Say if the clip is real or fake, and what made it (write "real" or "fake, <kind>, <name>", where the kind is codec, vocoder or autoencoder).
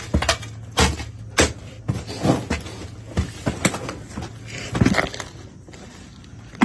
real